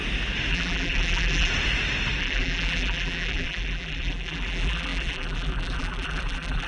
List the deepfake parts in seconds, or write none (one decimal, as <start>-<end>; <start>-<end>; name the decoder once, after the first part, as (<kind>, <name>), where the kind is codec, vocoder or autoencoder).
0.5-1.5 (vocoder, BigVGAN v2); 2.2-6.7